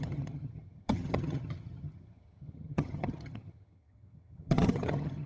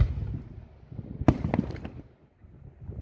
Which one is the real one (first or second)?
second